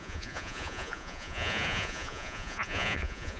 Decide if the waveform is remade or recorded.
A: remade